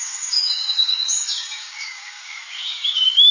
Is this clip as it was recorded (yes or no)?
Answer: no